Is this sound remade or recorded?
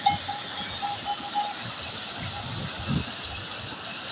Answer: recorded